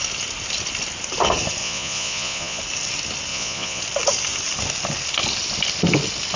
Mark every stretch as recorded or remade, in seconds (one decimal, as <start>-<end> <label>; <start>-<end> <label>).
0.0-1.6 recorded; 1.6-2.6 remade; 2.6-3.3 recorded; 3.3-3.8 remade; 3.8-6.4 recorded